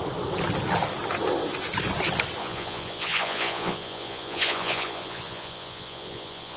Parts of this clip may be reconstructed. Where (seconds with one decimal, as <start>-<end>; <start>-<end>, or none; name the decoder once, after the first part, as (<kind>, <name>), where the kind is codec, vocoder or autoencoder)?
2.4-6.6 (vocoder, Vocos)